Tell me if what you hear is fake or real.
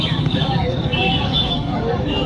fake